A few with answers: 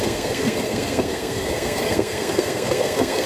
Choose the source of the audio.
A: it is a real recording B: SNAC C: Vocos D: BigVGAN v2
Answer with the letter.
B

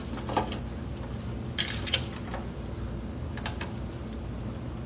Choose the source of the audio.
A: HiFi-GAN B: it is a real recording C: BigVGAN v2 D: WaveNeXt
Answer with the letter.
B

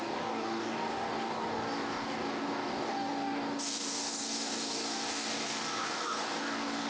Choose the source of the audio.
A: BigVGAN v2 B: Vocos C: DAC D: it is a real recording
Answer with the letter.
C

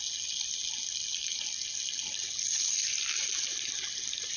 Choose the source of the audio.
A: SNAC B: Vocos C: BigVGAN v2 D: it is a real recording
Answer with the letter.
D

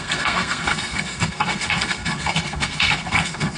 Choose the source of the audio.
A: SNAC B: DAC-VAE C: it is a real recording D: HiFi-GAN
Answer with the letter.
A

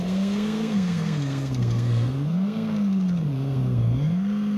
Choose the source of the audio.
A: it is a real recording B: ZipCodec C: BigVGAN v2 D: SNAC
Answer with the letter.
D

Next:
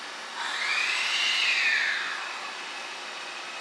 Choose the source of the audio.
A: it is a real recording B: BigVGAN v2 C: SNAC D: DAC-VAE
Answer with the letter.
A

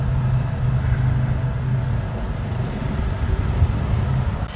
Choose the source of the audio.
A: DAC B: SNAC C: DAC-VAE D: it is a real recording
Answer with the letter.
D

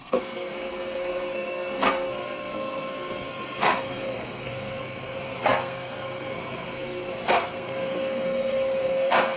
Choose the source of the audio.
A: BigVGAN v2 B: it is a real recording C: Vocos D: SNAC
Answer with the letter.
D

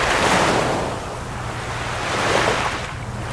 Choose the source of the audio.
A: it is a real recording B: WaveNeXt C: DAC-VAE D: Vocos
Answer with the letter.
A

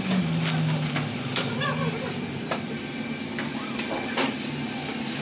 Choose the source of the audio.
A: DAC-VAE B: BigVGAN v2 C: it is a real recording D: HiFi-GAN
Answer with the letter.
C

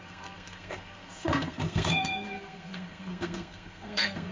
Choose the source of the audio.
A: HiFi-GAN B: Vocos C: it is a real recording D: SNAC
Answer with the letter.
D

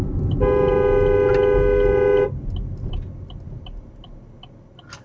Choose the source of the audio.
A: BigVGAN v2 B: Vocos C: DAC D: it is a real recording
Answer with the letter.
D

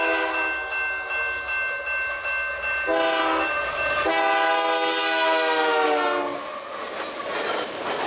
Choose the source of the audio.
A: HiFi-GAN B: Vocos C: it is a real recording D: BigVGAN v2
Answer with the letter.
C